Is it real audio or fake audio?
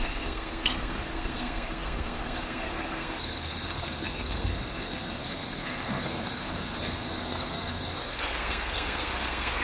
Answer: fake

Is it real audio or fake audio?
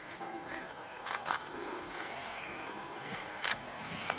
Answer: fake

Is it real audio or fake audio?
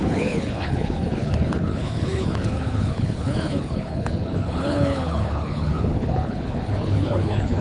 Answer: fake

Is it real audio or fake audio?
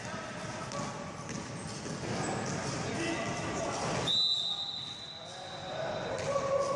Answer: real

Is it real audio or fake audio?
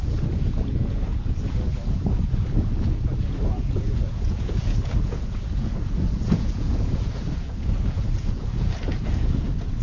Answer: fake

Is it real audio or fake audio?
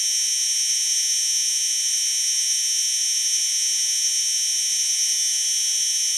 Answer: real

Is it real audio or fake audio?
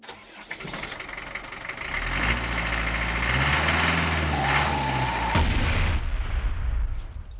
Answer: real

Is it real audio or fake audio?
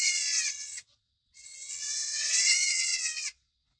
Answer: fake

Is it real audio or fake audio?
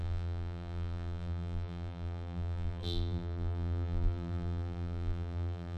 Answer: fake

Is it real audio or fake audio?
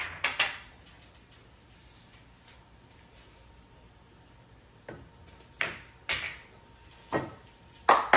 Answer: real